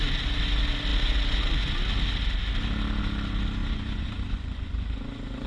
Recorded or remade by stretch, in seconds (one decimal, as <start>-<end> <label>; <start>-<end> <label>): 0.0-3.6 recorded; 3.6-5.5 remade